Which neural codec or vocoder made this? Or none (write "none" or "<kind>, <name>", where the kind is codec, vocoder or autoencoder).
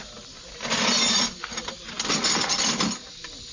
none